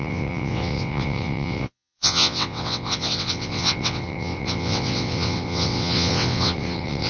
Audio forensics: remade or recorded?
remade